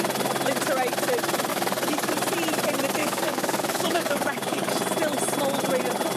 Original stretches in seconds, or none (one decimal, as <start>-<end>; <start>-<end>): 0.0-1.5; 2.1-3.0; 4.7-6.2